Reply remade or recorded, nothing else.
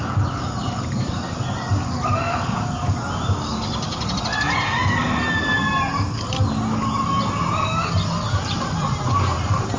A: recorded